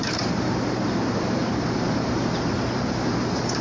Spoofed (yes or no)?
yes